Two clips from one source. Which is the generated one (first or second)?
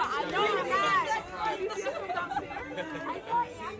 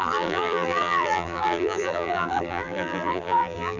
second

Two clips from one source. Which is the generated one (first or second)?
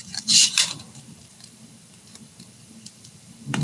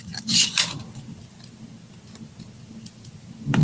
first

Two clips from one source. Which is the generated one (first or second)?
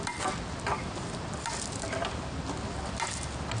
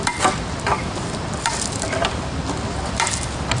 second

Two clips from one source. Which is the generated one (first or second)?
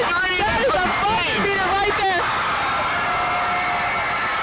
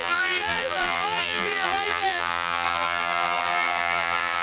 second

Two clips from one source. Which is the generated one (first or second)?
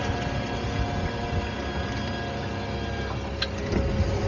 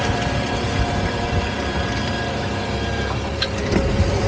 second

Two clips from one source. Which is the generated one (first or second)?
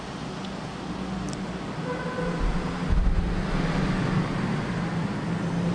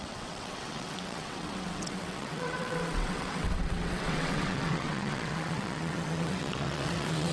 second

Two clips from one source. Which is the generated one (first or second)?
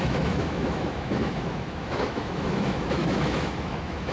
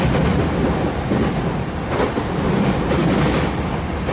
first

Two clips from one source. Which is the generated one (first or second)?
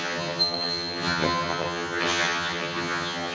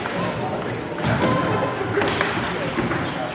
first